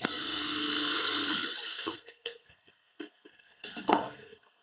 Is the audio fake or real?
fake